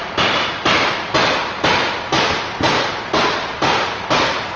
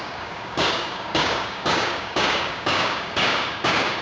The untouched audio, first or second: first